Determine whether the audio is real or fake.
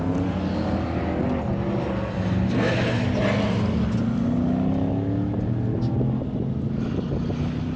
real